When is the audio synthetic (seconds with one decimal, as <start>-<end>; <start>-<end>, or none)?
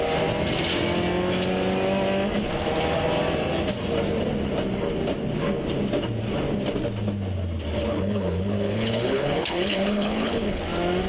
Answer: 7.9-10.6